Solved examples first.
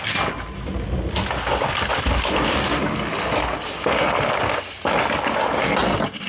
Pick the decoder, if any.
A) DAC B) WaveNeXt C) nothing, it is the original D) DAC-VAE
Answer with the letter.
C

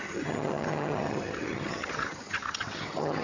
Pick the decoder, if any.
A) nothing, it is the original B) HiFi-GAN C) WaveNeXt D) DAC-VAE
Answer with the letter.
B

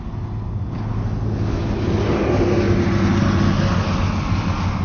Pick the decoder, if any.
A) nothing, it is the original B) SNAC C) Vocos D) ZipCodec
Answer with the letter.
A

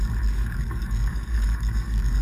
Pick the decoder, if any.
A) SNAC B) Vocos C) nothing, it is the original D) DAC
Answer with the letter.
D